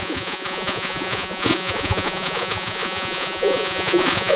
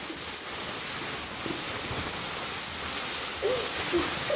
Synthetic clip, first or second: first